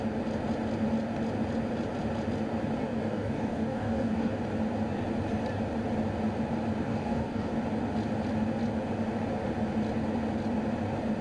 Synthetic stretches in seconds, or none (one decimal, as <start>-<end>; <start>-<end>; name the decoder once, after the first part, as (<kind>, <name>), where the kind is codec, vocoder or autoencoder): 2.8-4.4 (codec, DAC); 6.9-7.5